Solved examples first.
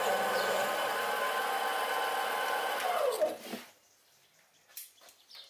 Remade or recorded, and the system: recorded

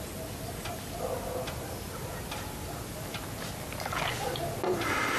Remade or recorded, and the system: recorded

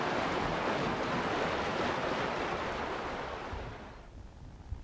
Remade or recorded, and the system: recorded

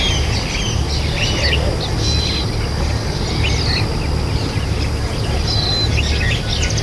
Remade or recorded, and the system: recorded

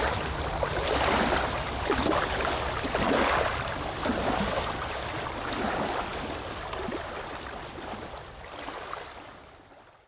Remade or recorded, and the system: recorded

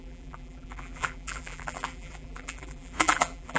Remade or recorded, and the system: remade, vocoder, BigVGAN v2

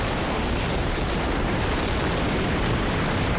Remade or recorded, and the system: remade, vocoder, BigVGAN v2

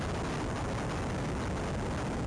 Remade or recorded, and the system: recorded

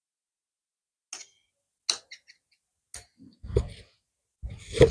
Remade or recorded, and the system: recorded